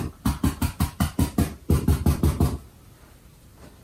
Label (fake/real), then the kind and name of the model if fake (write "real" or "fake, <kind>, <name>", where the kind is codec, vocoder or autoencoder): fake, vocoder, BigVGAN v2